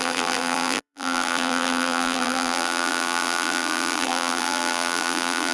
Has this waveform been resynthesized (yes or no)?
yes